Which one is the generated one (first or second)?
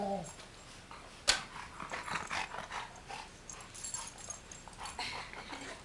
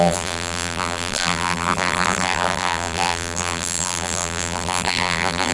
second